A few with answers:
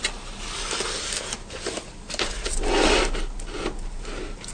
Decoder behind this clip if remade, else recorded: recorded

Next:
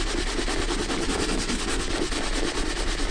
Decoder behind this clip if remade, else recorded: recorded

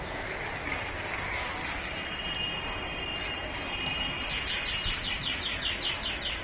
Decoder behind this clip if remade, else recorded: recorded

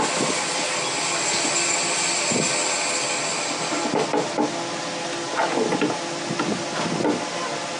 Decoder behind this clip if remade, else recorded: recorded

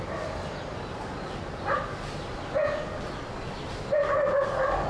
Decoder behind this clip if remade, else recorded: recorded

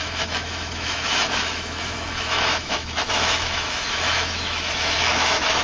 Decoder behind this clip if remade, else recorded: remade, autoencoder, DAC-VAE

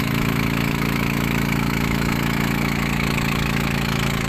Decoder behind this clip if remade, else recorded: remade, autoencoder, DAC-VAE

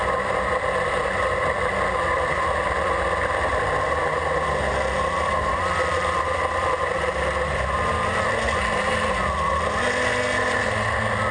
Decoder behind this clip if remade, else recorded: recorded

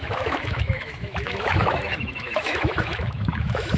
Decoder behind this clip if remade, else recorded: remade, autoencoder, DAC-VAE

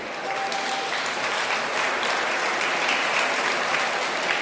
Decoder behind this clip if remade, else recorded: recorded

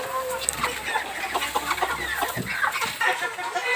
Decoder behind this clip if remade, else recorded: recorded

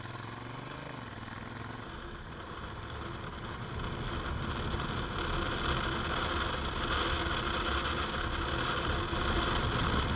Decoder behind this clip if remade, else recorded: recorded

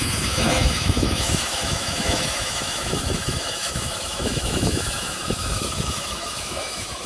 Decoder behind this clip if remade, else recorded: remade, autoencoder, DAC-VAE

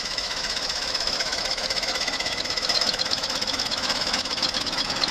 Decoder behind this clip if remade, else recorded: remade, autoencoder, DAC-VAE